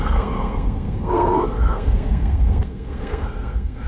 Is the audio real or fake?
fake